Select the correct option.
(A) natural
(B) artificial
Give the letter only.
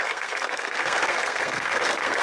B